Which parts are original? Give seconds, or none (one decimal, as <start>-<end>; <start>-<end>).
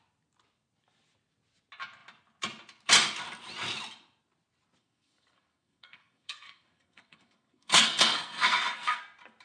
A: 0.0-4.8; 9.0-9.4